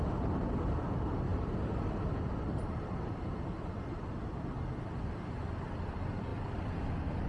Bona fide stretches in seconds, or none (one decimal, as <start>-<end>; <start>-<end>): 0.0-7.3